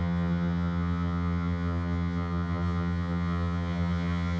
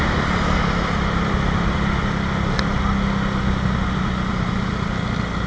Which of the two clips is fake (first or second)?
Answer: first